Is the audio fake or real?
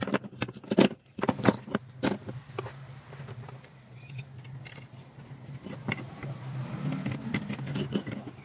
fake